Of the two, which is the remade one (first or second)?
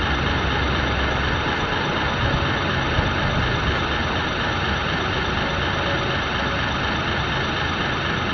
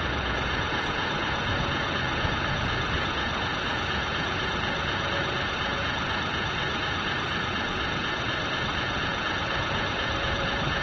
second